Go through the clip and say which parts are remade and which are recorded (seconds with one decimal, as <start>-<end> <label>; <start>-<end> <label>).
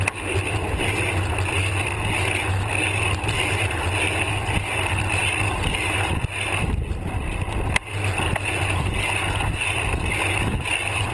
0.0-11.1 recorded